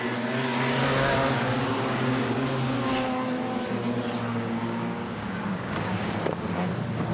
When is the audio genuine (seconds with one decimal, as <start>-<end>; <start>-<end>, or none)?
0.0-0.8; 2.9-4.3; 6.4-7.1